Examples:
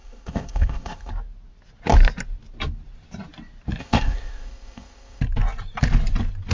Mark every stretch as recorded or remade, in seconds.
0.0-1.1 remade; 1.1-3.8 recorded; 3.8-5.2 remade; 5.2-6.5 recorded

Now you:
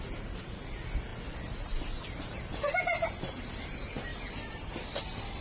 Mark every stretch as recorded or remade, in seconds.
0.0-5.4 recorded

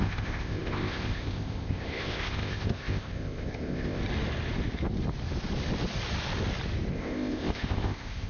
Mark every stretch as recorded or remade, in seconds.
0.0-4.0 remade; 4.0-6.9 recorded; 6.9-8.3 remade

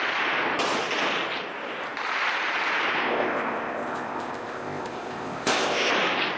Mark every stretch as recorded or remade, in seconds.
0.0-3.0 recorded; 3.0-5.9 remade; 5.9-6.4 recorded